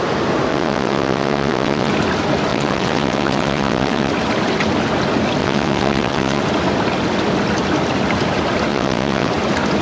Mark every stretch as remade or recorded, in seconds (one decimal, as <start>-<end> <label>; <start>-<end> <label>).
0.0-0.5 recorded; 0.5-1.9 remade; 1.9-2.5 recorded; 2.5-4.1 remade; 4.1-5.4 recorded; 5.4-6.4 remade; 6.4-8.7 recorded; 8.7-9.3 remade; 9.3-9.8 recorded